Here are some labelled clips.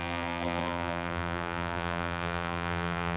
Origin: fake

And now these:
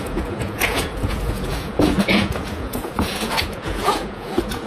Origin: fake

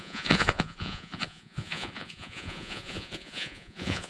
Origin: fake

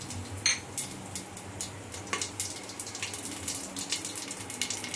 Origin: real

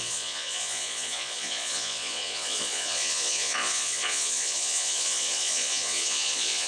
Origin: fake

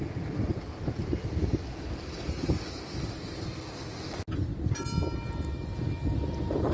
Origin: real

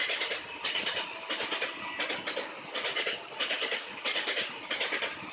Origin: real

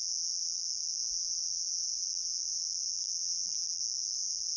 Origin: fake